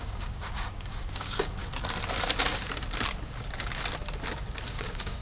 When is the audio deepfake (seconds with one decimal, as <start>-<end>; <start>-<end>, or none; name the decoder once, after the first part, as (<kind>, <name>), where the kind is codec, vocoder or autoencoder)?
0.0-1.6 (codec, DAC); 4.7-5.2